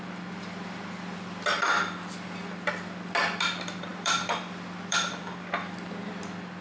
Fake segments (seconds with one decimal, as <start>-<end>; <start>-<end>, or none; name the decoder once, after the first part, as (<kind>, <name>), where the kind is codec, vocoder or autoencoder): 0.0-6.6 (vocoder, BigVGAN v2)